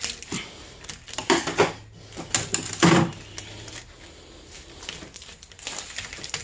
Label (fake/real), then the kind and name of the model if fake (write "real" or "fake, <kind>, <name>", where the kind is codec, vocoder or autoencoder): real